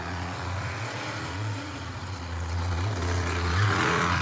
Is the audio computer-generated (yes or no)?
yes